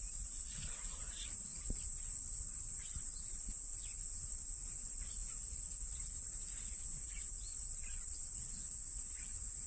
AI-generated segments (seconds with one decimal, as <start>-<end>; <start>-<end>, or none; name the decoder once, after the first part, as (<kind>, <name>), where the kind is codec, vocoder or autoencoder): 1.5-3.2 (vocoder, BigVGAN v2); 7.5-8.5